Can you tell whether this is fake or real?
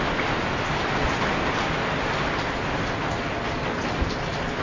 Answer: real